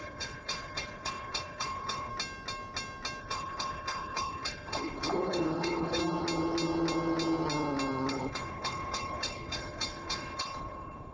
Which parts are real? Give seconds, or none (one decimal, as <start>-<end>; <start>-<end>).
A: 2.1-3.2; 6.0-8.1